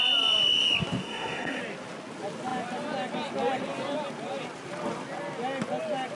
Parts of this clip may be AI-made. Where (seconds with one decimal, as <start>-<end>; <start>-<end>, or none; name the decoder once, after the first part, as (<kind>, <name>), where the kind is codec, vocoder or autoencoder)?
1.0-1.6 (codec, SNAC)